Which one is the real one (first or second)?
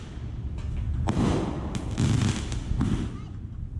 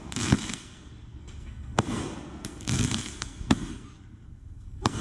first